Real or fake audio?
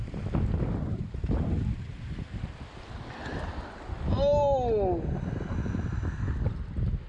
real